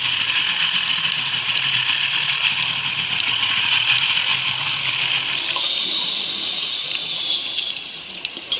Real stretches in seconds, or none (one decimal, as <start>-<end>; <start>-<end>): 1.8-3.1; 4.3-6.1